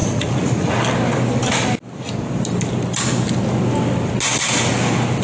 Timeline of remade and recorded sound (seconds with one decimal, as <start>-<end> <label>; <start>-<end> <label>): 0.0-0.7 remade; 0.7-5.2 recorded